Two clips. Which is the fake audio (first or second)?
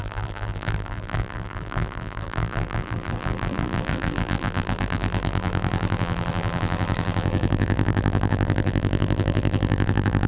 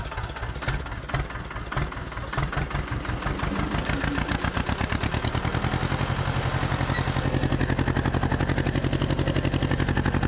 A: first